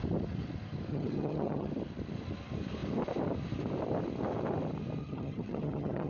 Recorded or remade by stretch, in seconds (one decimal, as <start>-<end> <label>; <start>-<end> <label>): 0.0-0.9 recorded; 0.9-1.7 remade; 1.7-5.0 recorded; 5.0-6.1 remade